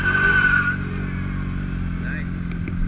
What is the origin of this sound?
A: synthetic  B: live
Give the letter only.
B